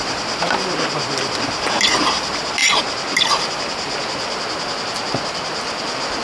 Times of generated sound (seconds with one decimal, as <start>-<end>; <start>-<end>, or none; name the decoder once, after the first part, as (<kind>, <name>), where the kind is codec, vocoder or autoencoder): none

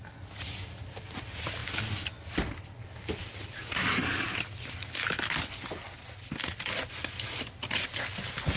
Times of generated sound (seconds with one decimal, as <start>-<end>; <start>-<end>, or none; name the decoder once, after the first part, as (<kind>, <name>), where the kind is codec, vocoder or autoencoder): none

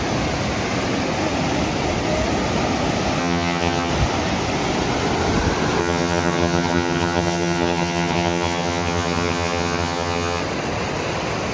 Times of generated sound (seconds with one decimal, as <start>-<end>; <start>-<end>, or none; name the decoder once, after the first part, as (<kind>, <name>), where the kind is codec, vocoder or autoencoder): 3.2-3.9 (vocoder, HiFi-GAN); 5.8-10.4